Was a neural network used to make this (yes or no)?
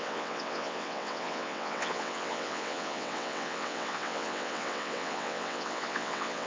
yes